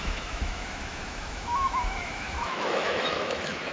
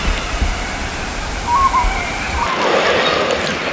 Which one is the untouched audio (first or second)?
second